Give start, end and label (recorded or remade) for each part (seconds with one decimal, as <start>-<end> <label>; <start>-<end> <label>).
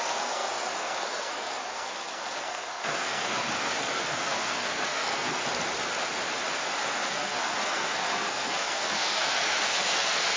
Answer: 0.0-5.4 remade; 5.4-6.8 recorded; 6.8-10.4 remade